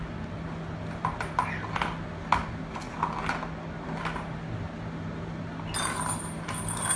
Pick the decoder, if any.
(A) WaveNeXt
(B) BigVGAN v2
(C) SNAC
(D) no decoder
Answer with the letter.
D